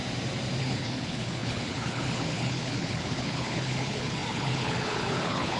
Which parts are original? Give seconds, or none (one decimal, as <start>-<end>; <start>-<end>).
0.0-0.6